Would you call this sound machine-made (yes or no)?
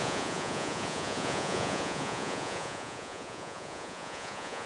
yes